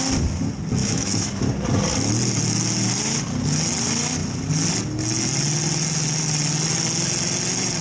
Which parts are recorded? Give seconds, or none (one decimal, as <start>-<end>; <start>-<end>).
0.0-0.8; 1.4-7.8